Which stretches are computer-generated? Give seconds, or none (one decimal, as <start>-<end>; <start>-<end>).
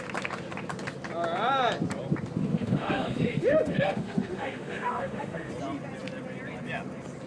2.5-5.5